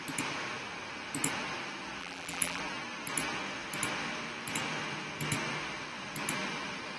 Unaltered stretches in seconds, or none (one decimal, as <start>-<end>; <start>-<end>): 0.0-2.0; 2.6-7.0